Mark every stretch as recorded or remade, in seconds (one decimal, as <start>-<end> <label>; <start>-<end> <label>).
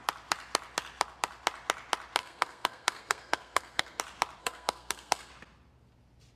0.0-2.2 recorded; 2.2-4.0 remade; 4.0-4.4 recorded; 4.4-5.3 remade; 5.3-6.4 recorded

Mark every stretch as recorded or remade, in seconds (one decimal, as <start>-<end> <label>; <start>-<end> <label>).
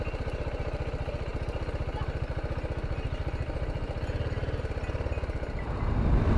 0.0-6.4 recorded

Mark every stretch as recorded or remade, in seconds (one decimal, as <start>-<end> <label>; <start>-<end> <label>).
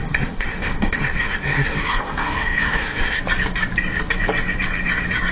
0.0-3.2 remade; 3.2-5.3 recorded